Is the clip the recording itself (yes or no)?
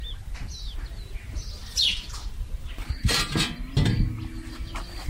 yes